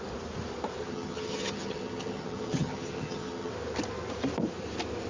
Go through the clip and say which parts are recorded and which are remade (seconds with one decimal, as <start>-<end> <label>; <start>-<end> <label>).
0.0-0.8 recorded; 0.8-3.5 remade; 3.5-5.1 recorded